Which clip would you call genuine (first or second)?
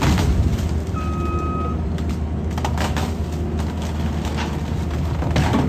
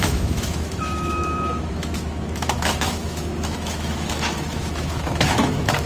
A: first